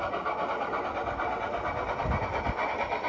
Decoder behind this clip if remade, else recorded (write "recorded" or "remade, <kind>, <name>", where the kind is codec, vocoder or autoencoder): recorded